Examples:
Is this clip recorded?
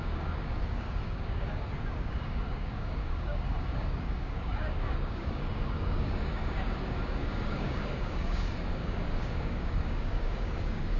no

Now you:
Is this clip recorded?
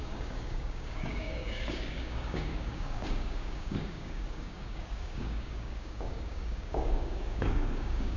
no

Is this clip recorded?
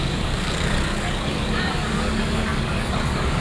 no